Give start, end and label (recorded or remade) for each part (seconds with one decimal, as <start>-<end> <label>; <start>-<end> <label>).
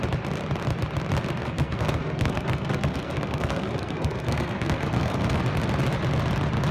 0.0-1.4 recorded; 1.4-5.4 remade; 5.4-6.7 recorded